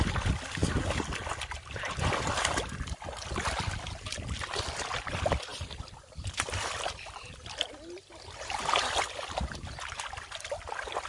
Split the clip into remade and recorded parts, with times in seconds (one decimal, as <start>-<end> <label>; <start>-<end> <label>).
0.0-5.5 recorded; 5.5-7.3 remade; 7.3-11.1 recorded